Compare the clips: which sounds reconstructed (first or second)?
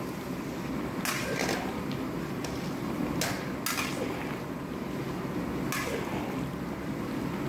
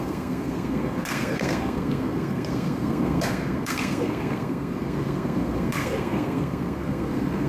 second